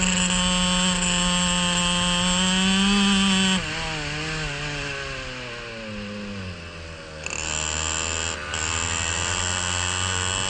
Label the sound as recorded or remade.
recorded